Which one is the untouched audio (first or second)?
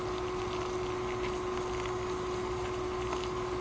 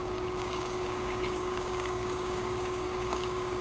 first